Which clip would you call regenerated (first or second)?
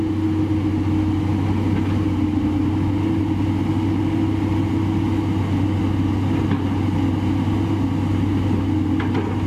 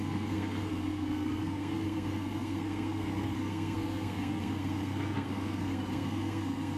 second